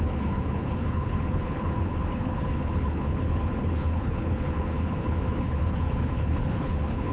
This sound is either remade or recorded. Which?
remade